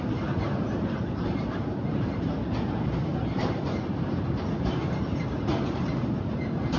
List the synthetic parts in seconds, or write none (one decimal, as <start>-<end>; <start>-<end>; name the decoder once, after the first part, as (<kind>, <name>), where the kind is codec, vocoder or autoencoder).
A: 0.0-6.8 (vocoder, BigVGAN v2)